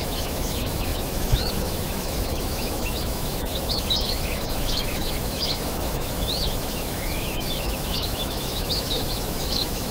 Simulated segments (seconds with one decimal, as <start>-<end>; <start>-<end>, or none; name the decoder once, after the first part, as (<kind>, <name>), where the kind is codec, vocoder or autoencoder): 0.0-9.9 (autoencoder, DAC-VAE)